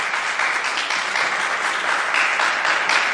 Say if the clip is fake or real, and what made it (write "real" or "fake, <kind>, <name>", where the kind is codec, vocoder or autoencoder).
real